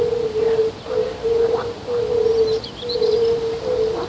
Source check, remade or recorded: recorded